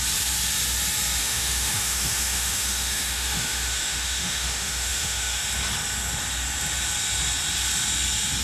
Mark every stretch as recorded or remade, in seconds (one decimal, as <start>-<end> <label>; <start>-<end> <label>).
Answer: 0.0-1.2 recorded; 1.2-5.4 remade; 5.4-8.4 recorded